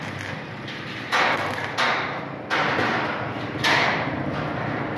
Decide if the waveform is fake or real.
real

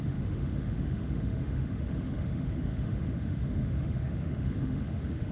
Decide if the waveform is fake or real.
fake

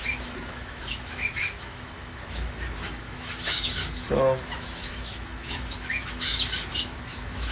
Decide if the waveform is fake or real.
fake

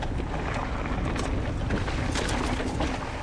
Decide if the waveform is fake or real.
real